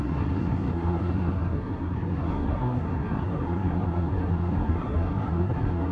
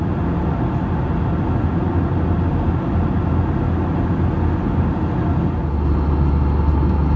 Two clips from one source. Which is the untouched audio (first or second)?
second